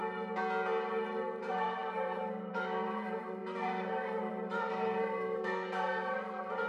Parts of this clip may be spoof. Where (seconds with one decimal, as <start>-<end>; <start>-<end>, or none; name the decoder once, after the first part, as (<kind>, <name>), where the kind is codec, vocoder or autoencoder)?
1.4-6.7 (codec, SNAC)